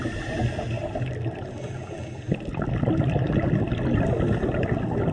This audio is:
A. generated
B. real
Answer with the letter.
B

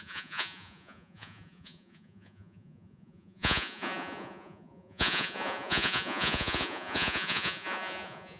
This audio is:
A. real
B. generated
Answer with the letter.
B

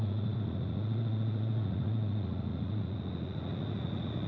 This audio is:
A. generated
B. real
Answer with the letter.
A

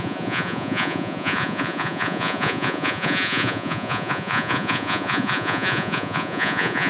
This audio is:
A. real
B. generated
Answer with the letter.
B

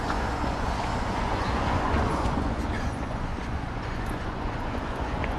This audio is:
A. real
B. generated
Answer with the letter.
B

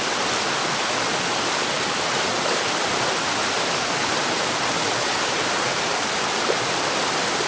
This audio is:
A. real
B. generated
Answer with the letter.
A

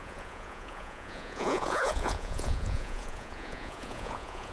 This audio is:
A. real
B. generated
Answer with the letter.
B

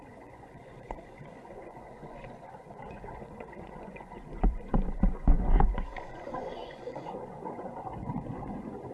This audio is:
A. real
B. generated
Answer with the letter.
B